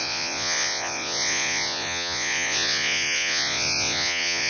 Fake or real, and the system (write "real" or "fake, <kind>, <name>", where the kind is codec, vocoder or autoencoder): fake, vocoder, Vocos